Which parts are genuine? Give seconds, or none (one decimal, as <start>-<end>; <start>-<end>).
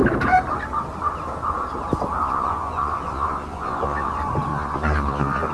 0.0-2.2; 4.1-4.5